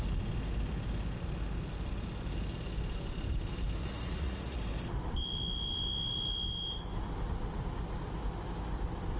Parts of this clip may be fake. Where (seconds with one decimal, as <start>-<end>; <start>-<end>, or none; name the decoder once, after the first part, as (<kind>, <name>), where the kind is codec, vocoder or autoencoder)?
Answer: 3.8-4.6 (vocoder, Vocos)